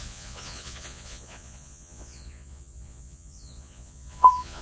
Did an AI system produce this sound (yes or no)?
yes